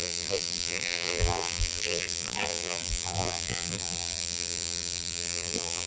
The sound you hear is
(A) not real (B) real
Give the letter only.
A